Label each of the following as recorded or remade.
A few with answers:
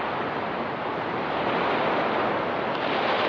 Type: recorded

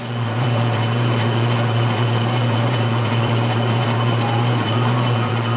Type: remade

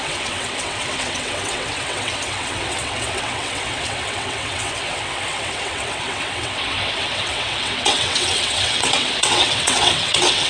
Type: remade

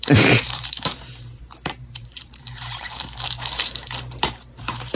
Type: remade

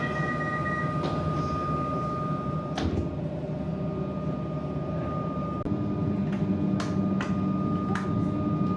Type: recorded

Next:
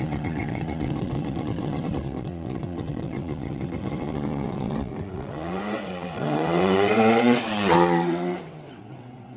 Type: remade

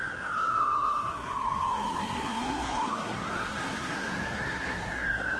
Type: remade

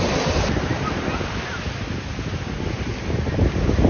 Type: recorded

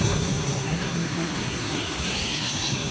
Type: remade